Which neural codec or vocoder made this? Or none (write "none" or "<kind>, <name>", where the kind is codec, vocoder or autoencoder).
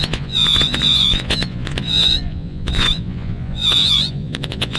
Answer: vocoder, Vocos